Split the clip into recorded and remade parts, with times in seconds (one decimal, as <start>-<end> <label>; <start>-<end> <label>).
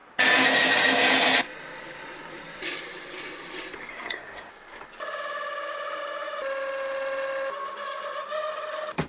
0.0-3.9 recorded; 3.9-4.5 remade; 4.5-9.1 recorded